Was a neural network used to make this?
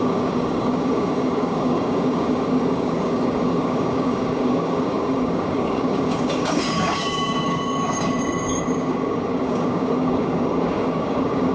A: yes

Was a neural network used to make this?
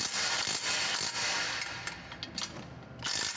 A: no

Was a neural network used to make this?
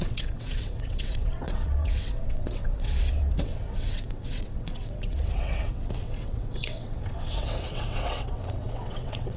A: yes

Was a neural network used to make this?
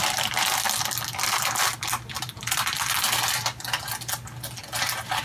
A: no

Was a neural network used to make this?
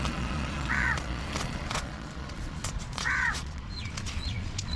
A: yes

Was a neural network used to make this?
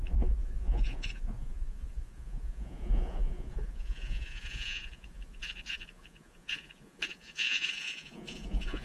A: yes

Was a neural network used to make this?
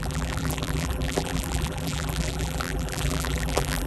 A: yes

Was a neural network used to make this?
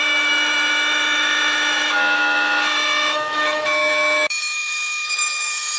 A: yes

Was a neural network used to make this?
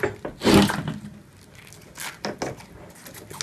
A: no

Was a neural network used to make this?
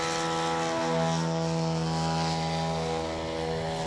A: no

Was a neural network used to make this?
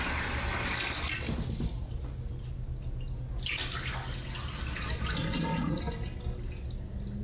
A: no